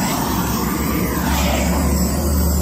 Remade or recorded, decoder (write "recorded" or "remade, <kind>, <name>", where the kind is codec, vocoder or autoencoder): recorded